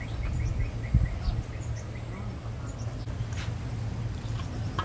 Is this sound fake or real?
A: real